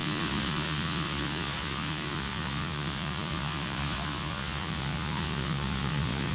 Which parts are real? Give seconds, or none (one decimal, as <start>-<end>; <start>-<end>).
none